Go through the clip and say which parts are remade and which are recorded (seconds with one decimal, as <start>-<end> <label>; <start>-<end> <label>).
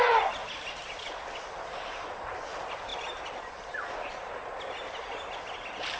0.0-0.4 recorded; 0.4-1.4 remade; 1.4-2.9 recorded; 2.9-3.5 remade; 3.5-6.0 recorded